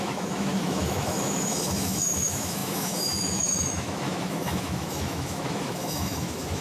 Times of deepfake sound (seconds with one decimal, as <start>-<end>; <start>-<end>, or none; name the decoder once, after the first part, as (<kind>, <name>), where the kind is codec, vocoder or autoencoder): 0.0-6.6 (autoencoder, DAC-VAE)